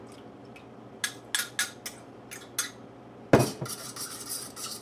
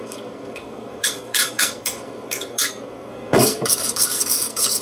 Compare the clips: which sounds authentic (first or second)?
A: first